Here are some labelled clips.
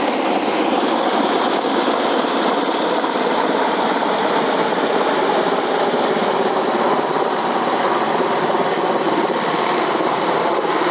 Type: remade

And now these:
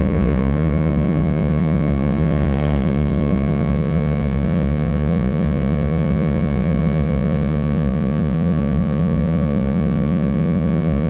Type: remade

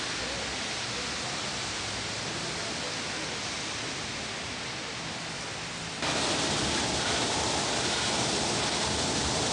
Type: recorded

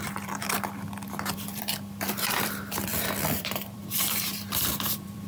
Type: remade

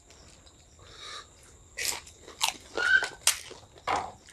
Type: recorded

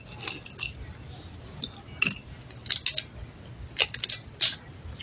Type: recorded